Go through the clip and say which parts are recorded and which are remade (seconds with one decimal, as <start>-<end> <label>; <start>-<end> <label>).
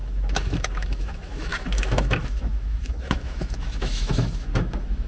0.0-5.1 remade